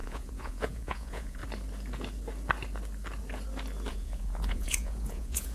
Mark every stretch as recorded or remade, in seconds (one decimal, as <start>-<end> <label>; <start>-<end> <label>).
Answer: 0.0-1.4 remade; 1.4-3.9 recorded; 3.9-5.5 remade

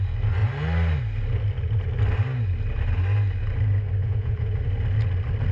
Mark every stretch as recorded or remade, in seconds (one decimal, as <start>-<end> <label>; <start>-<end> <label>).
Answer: 0.0-4.0 recorded; 4.0-4.6 remade; 4.6-5.5 recorded

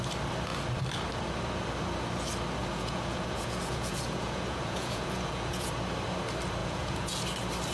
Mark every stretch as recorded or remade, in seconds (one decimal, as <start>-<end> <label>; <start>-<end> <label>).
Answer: 0.0-2.6 recorded; 2.6-5.7 remade; 5.7-6.6 recorded; 6.6-7.2 remade; 7.2-7.7 recorded

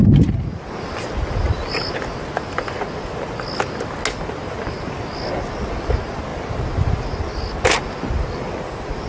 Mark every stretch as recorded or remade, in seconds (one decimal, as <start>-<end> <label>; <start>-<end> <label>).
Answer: 0.0-9.1 recorded

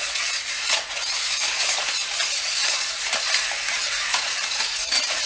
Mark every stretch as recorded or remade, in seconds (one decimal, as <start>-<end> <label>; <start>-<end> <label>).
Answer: 0.0-2.0 remade; 2.0-4.1 recorded; 4.1-5.3 remade

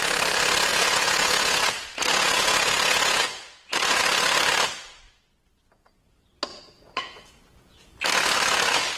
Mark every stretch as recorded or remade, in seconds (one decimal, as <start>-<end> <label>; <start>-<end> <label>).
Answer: 0.0-0.7 recorded; 0.7-4.0 remade; 4.0-6.5 recorded; 6.5-8.0 remade; 8.0-9.0 recorded